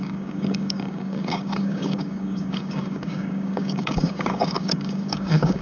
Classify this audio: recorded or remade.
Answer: remade